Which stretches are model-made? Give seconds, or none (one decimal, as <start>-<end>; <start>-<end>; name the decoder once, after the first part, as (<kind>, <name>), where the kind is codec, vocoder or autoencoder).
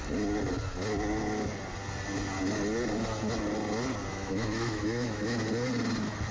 4.1-5.5 (autoencoder, DAC-VAE)